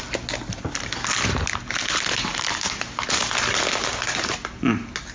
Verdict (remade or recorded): recorded